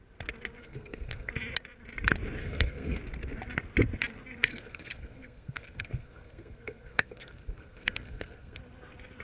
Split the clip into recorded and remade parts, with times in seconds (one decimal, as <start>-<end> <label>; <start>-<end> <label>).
0.0-0.6 recorded; 0.6-1.3 remade; 1.3-2.4 recorded; 2.4-3.0 remade; 3.0-4.5 recorded; 4.5-8.6 remade; 8.6-9.2 recorded